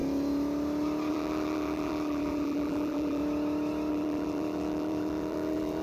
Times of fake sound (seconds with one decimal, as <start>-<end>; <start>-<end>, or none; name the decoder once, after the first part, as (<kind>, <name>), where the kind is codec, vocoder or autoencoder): 1.1-3.2 (vocoder, BigVGAN v2); 3.9-5.8

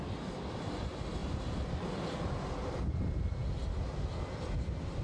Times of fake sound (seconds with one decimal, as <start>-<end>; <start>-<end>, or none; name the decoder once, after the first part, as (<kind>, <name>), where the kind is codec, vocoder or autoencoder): none